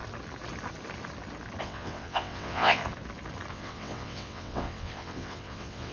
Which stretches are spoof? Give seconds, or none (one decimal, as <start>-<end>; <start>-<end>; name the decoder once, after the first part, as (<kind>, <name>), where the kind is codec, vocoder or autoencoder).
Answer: 1.6-2.8 (vocoder, WaveNeXt); 3.5-5.9